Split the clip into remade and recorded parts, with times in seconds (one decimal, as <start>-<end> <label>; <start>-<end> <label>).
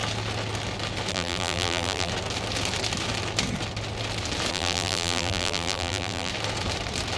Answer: 0.0-1.1 recorded; 1.1-2.1 remade; 2.1-4.5 recorded; 4.5-6.3 remade; 6.3-7.2 recorded